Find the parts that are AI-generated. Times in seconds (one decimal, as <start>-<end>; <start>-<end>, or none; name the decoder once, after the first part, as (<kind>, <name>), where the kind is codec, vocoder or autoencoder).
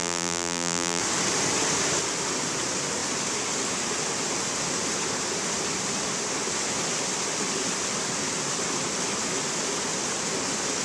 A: 0.0-1.0 (vocoder, BigVGAN v2)